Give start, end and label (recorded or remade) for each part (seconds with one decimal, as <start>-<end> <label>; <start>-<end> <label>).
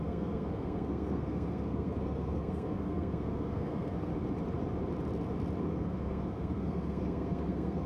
0.0-4.1 remade; 4.1-5.6 recorded; 5.6-7.9 remade